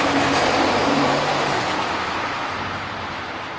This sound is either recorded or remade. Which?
remade